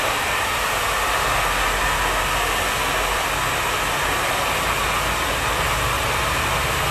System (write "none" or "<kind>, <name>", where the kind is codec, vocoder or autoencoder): none